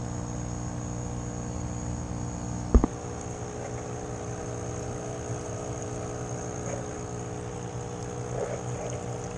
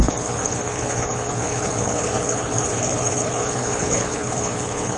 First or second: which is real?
first